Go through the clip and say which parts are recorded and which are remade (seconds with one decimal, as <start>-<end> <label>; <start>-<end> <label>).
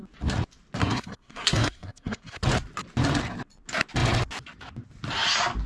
0.0-0.8 recorded; 0.8-2.4 remade; 2.4-5.7 recorded